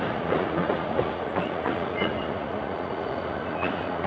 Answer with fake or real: fake